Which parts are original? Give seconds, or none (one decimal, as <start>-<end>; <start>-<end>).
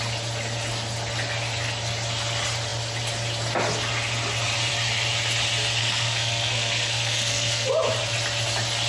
0.0-5.8; 7.7-8.9